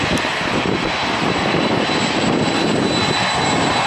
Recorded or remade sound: recorded